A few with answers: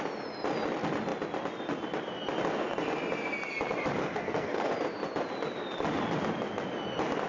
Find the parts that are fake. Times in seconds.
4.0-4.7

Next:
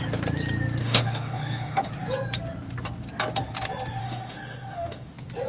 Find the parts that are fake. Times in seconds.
0.8-1.9; 4.0-5.1

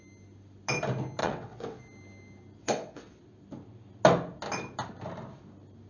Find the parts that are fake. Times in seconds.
1.2-1.8; 2.6-3.2

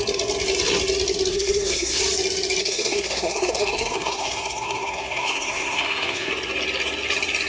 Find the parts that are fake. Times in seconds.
1.3-2.0; 2.6-6.3